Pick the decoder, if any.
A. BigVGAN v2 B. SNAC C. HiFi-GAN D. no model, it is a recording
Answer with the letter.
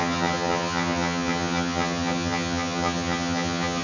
C